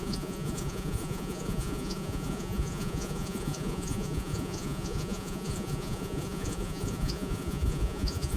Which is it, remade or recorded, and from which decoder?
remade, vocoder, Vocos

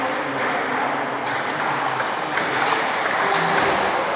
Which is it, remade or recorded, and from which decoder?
recorded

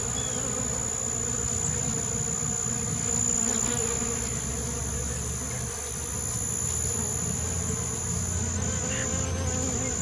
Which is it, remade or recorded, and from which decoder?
recorded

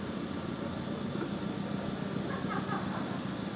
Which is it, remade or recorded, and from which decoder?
recorded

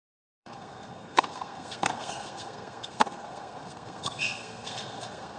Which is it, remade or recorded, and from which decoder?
remade, codec, SNAC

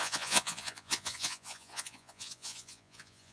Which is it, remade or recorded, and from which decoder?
remade, vocoder, Vocos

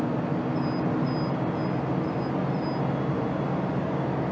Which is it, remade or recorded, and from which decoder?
recorded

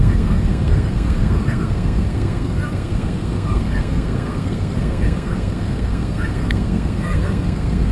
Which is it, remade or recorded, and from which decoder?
remade, codec, SNAC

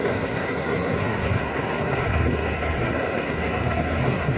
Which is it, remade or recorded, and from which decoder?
remade, codec, SNAC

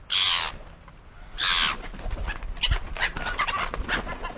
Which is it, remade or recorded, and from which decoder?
recorded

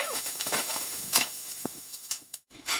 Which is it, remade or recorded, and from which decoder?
remade, autoencoder, DAC-VAE